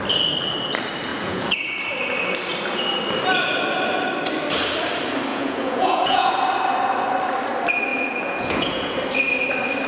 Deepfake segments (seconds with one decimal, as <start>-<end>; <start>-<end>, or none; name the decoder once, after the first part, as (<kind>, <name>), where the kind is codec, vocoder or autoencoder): 1.1-1.7 (vocoder, Vocos); 5.3-6.3; 7.9-9.0